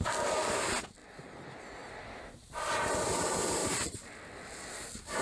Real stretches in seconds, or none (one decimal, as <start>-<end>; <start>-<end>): 0.0-5.2